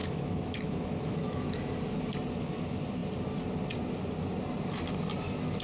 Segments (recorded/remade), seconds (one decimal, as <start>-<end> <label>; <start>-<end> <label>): 0.0-1.7 remade; 1.7-5.6 recorded